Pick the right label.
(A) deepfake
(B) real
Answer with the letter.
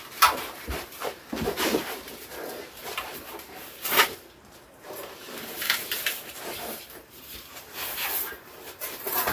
A